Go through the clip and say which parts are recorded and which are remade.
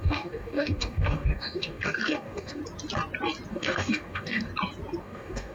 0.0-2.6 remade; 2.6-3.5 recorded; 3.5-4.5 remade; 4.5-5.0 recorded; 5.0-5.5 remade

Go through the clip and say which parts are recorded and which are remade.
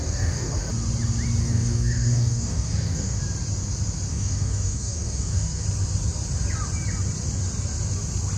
0.0-0.5 remade; 0.5-1.4 recorded; 1.4-3.2 remade; 3.2-4.1 recorded; 4.1-5.6 remade; 5.6-8.4 recorded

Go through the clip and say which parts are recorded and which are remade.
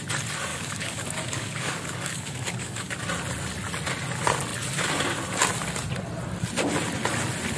0.0-0.5 recorded; 0.5-2.9 remade; 2.9-7.6 recorded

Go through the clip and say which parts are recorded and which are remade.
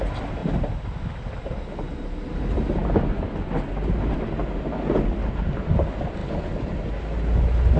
0.0-7.8 recorded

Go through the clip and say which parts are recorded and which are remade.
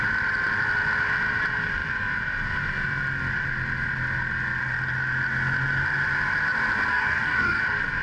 0.0-6.9 recorded; 6.9-7.6 remade; 7.6-8.0 recorded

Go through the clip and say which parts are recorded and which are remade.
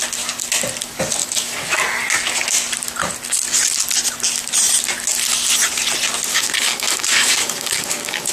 0.0-1.2 recorded; 1.2-1.8 remade; 1.8-6.3 recorded; 6.3-8.3 remade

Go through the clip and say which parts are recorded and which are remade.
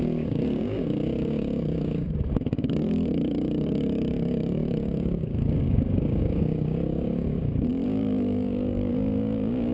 0.0-9.7 remade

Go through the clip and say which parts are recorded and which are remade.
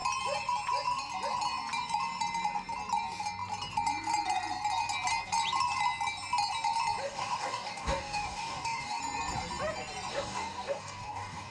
0.0-7.0 recorded; 7.0-9.0 remade; 9.0-10.1 recorded; 10.1-11.5 remade